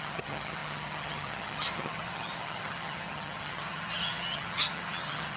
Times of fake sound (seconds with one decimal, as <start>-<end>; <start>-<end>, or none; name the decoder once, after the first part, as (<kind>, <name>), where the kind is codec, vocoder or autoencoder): 0.0-5.4 (vocoder, HiFi-GAN)